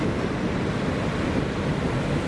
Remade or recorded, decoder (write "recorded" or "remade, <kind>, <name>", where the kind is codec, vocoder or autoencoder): recorded